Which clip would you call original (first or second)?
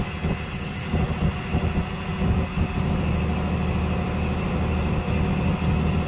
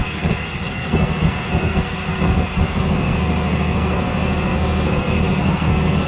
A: first